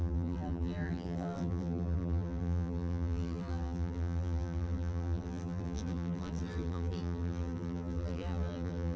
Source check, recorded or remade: remade